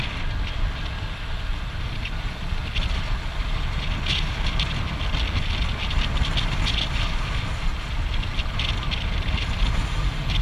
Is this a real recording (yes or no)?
yes